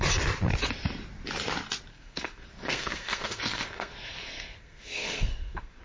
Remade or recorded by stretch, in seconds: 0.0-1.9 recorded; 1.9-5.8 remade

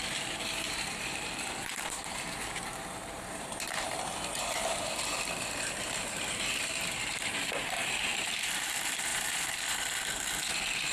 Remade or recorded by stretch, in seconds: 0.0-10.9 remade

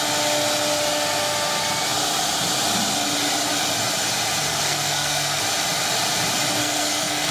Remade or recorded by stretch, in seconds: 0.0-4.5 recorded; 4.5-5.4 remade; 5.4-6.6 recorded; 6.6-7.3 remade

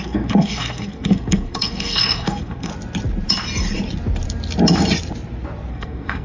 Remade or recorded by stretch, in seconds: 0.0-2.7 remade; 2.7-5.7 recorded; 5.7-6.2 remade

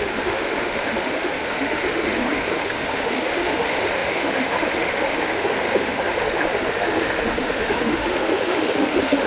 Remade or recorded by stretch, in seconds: 0.0-9.3 remade

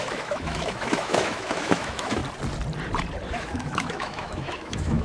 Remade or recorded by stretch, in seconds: 0.0-2.2 remade; 2.2-3.3 recorded; 3.3-5.0 remade